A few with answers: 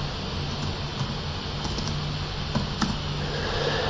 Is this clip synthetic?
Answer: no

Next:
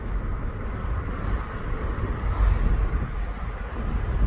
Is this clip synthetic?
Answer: no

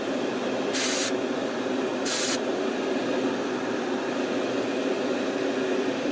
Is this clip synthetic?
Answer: no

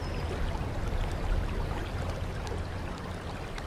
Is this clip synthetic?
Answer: no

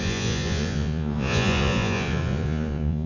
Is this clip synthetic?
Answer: yes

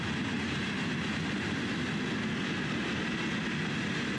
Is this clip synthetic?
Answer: no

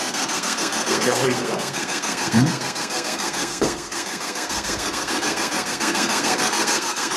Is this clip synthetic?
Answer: yes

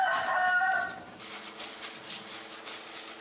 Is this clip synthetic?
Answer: no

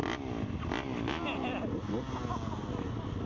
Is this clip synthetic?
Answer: no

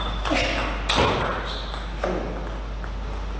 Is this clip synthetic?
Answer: no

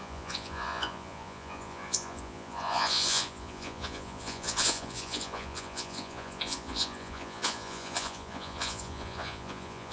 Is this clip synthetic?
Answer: yes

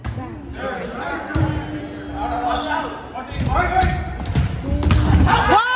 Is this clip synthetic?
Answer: no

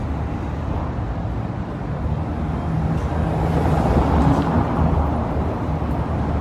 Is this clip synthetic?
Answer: no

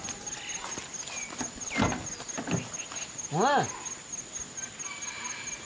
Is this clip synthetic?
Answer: no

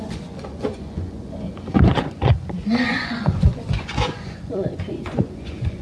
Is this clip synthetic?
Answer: yes